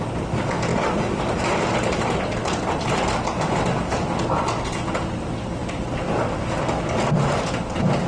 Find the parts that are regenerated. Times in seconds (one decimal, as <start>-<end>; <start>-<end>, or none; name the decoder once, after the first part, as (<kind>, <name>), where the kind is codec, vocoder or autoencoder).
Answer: 0.7-1.2 (vocoder, BigVGAN v2)